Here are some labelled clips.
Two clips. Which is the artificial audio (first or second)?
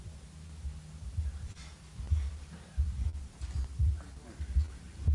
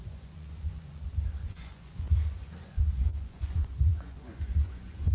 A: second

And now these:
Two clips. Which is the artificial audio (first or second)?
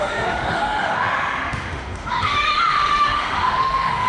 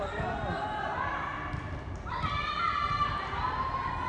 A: first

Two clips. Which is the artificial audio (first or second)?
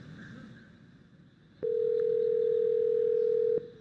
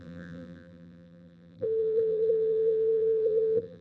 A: second